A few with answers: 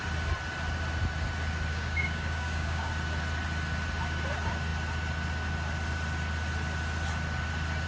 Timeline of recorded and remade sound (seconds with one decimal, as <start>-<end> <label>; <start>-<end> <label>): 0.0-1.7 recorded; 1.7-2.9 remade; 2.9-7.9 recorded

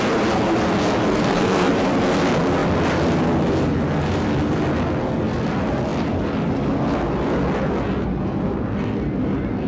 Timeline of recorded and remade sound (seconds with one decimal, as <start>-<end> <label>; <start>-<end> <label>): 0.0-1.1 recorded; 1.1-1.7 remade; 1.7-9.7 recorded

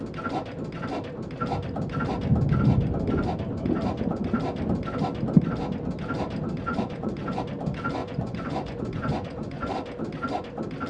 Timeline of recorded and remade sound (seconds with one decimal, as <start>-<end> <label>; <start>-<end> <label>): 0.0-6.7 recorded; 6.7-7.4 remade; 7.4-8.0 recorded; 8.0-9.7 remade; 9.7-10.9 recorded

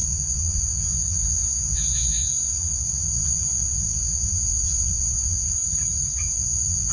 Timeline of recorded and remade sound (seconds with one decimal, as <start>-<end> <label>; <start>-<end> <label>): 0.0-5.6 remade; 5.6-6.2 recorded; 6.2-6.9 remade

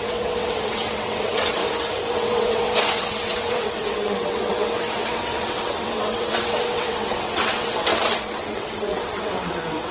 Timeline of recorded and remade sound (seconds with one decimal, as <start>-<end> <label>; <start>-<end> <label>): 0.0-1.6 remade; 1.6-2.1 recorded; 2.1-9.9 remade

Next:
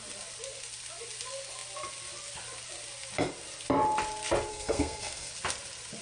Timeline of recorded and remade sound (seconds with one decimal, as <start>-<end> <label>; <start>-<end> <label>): 0.0-4.5 recorded; 4.5-5.3 remade; 5.3-6.0 recorded

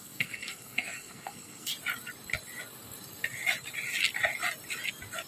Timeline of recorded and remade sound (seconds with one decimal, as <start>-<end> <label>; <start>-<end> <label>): 0.0-1.7 remade; 1.7-5.3 recorded

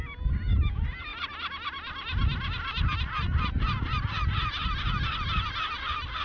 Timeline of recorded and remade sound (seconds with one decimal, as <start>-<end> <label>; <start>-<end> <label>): 0.0-6.2 recorded